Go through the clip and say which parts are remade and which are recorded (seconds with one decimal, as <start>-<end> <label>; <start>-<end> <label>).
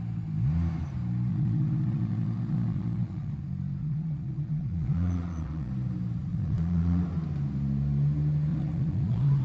0.0-1.3 recorded; 1.3-3.4 remade; 3.4-3.8 recorded; 3.8-5.7 remade; 5.7-6.3 recorded; 6.3-7.0 remade; 7.0-8.5 recorded; 8.5-9.4 remade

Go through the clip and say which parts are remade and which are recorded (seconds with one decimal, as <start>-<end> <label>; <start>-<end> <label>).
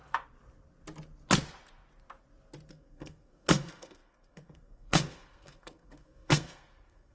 0.0-2.7 recorded; 2.7-7.1 remade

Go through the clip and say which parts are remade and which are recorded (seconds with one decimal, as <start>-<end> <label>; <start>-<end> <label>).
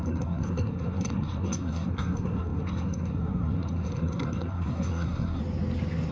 0.0-5.4 remade; 5.4-6.1 recorded